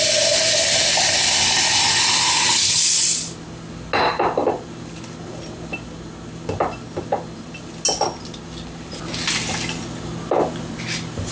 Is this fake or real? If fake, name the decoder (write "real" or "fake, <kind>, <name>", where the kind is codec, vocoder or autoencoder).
real